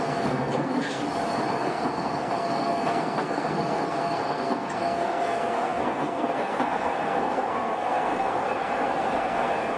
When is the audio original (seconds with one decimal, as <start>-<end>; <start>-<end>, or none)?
1.0-1.5